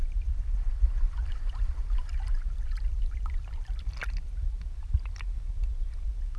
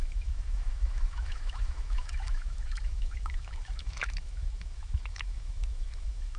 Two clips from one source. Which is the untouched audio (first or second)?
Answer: first